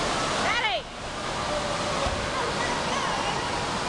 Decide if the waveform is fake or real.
real